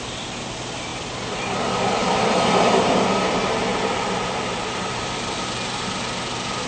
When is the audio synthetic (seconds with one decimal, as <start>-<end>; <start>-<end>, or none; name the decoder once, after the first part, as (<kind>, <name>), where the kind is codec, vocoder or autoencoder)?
2.0-2.9 (vocoder, BigVGAN v2); 3.7-5.1